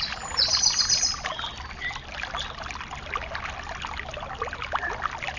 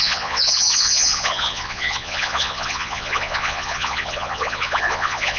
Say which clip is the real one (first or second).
first